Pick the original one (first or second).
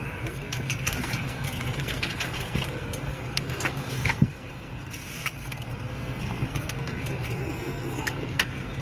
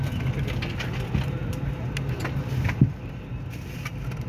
second